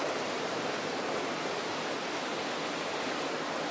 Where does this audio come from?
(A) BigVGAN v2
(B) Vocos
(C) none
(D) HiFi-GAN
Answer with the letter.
C